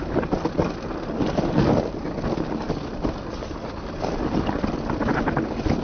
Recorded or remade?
recorded